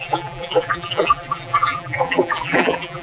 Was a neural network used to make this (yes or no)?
yes